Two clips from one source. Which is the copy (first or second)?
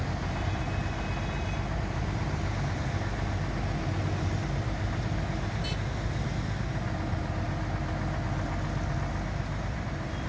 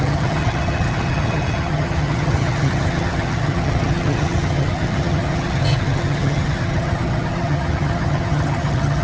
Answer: second